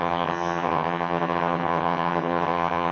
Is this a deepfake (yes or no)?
yes